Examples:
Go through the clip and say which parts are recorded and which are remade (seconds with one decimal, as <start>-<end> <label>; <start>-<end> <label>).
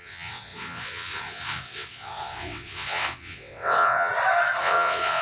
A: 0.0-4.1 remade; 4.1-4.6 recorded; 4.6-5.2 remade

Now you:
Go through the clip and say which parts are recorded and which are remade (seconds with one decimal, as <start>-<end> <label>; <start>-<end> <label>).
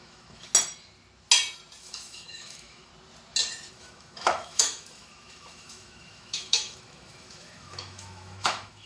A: 0.0-0.5 remade; 0.5-1.8 recorded; 1.8-2.9 remade; 2.9-3.7 recorded; 3.7-8.9 remade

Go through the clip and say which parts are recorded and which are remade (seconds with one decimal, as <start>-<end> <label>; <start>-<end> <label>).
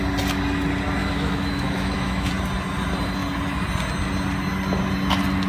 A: 0.0-1.0 recorded; 1.0-2.3 remade; 2.3-5.5 recorded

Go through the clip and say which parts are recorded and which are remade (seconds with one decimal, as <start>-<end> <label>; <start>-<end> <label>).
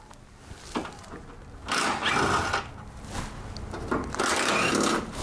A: 0.0-5.2 recorded